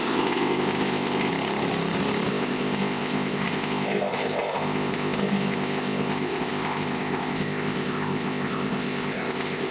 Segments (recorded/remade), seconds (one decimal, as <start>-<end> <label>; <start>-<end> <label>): 0.0-1.3 remade; 1.3-2.3 recorded; 2.3-9.7 remade